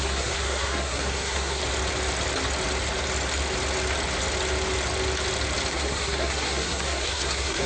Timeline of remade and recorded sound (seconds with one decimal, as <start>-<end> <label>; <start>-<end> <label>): 0.0-1.6 remade; 1.6-5.7 recorded; 5.7-7.7 remade